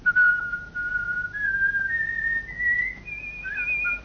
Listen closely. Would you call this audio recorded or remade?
recorded